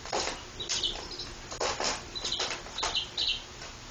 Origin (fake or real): real